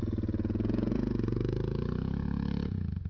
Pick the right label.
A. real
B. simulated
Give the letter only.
B